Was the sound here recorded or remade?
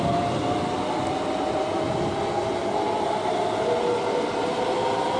recorded